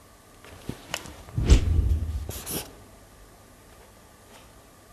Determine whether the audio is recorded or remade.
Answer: recorded